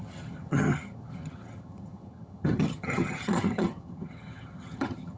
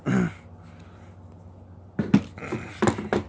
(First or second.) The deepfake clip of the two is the first